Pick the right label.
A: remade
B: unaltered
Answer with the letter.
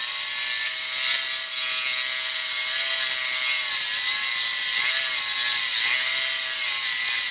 B